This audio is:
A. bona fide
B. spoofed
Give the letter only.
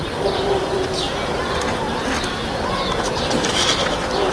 A